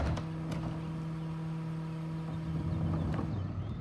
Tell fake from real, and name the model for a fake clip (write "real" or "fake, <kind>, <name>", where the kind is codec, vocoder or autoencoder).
real